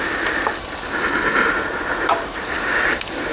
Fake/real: real